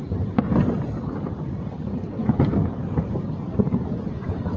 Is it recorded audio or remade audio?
recorded